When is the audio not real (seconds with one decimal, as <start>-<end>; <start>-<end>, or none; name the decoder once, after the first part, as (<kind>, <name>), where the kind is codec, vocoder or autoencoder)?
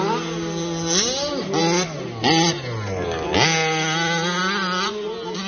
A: none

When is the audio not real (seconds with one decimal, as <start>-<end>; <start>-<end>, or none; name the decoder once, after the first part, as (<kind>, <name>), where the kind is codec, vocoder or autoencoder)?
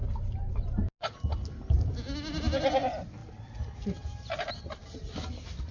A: 0.0-0.5 (vocoder, BigVGAN v2)